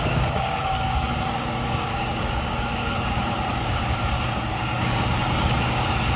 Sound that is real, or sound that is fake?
fake